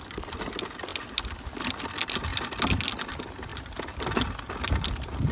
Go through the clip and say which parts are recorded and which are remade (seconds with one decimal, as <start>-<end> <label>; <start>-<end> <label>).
0.0-5.3 recorded